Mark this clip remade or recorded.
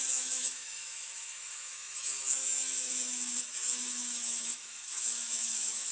remade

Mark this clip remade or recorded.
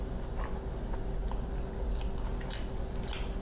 recorded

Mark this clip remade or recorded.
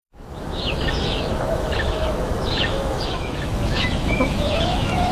remade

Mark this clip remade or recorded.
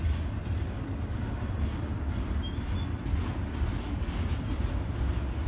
recorded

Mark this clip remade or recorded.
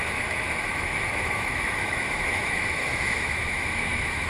remade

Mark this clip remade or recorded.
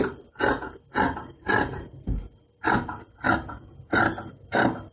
recorded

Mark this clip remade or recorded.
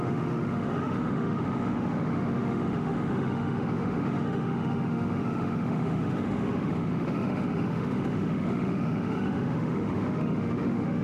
remade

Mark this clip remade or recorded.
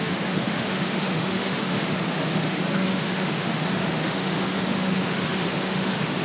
remade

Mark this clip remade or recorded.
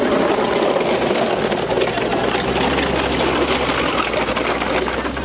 recorded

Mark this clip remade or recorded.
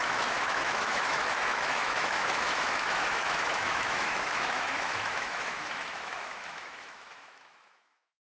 remade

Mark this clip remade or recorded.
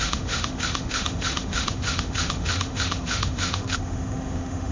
remade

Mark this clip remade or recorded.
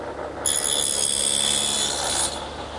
recorded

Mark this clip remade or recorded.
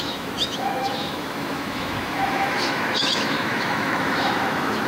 remade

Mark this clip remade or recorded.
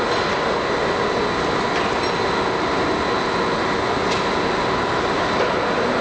recorded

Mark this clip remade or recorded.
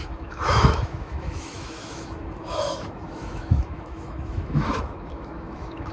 remade